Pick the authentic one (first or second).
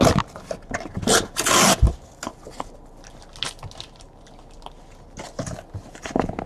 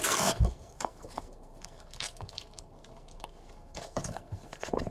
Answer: first